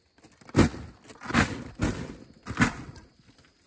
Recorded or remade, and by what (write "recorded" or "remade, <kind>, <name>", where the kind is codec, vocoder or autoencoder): recorded